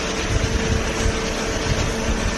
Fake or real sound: real